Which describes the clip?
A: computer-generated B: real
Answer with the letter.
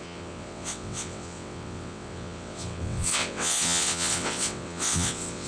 A